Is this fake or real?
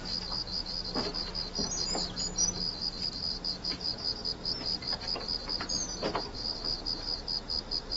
real